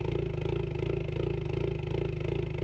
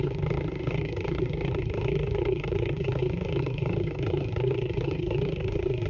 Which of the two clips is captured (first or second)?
first